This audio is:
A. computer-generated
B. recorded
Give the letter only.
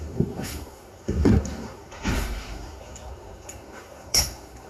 A